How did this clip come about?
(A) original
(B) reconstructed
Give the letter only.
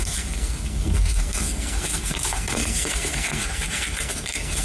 B